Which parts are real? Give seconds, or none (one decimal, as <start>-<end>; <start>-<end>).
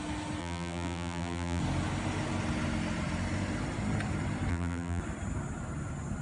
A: 0.0-0.4; 1.6-4.5; 5.0-6.2